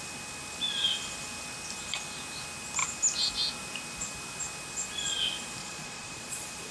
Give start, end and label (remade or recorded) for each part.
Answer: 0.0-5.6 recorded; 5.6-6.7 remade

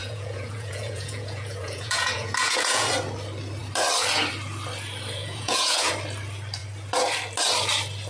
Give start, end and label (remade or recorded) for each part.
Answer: 0.0-2.9 remade; 2.9-5.2 recorded; 5.2-5.9 remade; 5.9-8.1 recorded